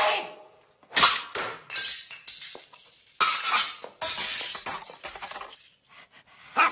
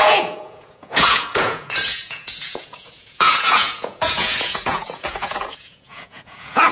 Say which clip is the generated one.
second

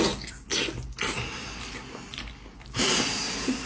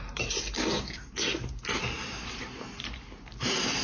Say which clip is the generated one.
second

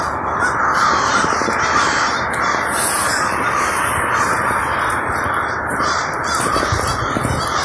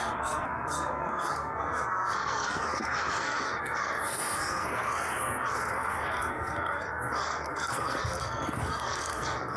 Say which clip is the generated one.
second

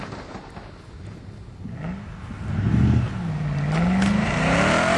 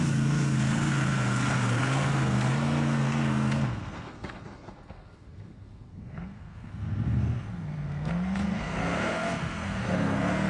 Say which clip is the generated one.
second